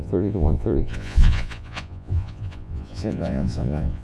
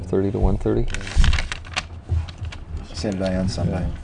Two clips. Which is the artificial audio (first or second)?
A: first